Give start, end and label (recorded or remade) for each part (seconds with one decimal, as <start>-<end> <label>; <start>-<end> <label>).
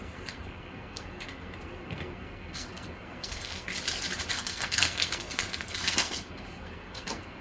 0.0-3.7 remade; 3.7-4.3 recorded; 4.3-7.4 remade